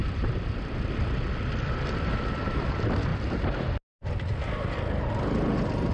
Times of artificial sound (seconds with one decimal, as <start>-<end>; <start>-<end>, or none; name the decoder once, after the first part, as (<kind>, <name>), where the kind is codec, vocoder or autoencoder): 0.0-2.6 (vocoder, BigVGAN v2)